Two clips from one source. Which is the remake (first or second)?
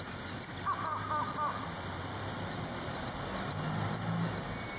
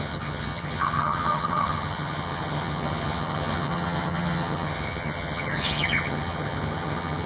second